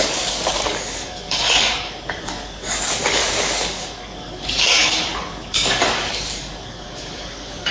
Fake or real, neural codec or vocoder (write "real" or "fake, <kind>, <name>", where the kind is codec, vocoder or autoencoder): fake, codec, DAC